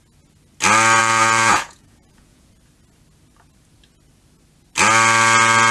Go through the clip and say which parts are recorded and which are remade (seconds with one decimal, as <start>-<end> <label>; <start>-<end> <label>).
0.0-1.0 recorded; 1.0-2.5 remade; 2.5-5.7 recorded